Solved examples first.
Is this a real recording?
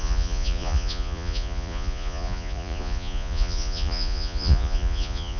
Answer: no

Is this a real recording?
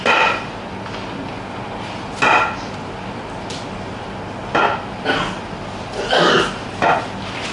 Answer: yes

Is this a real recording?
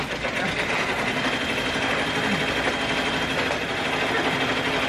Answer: yes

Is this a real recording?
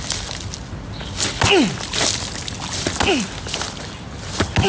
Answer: yes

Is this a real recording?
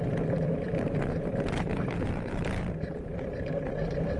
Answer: no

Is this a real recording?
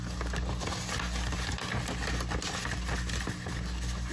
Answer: yes